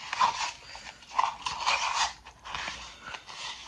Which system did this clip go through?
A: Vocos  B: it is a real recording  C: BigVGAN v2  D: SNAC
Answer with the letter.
B